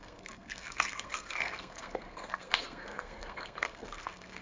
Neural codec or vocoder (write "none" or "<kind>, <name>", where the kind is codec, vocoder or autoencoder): codec, SNAC